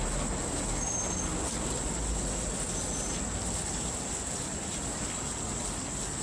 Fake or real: real